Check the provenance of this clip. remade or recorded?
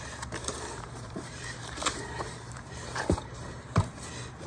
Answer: remade